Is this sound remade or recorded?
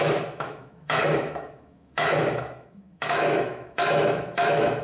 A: remade